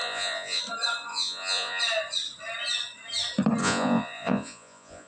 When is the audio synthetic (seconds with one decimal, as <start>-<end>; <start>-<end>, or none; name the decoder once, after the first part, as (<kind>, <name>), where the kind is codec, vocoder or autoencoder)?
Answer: 0.0-0.6 (vocoder, Vocos); 1.1-1.8; 3.6-5.1